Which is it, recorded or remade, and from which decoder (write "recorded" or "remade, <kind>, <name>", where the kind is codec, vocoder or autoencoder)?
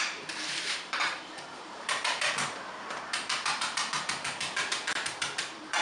remade, vocoder, BigVGAN v2